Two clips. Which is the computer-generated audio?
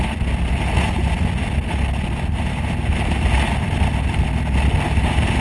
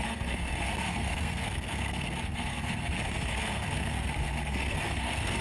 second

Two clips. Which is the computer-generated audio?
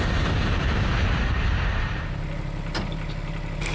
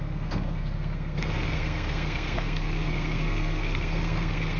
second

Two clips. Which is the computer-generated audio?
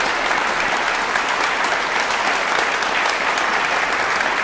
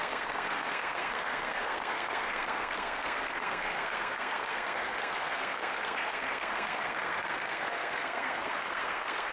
second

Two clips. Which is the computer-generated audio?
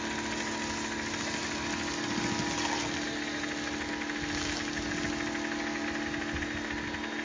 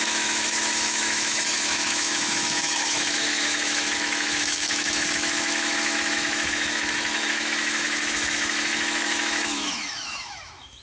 second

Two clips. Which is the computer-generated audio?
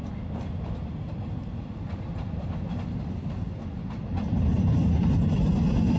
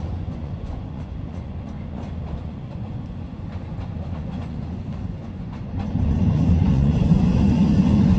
second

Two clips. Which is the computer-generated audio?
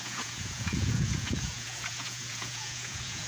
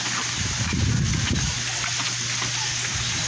first